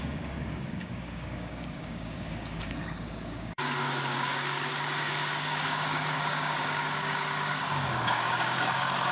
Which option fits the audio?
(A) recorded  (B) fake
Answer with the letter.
B